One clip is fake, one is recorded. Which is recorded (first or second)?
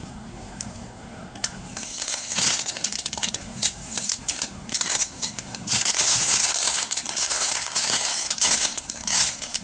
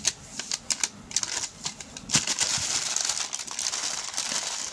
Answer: second